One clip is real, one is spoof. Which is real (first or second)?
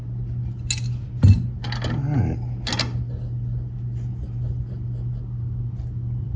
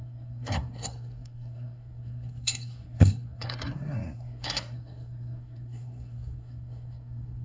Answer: first